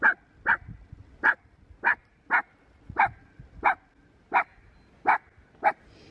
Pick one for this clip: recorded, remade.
recorded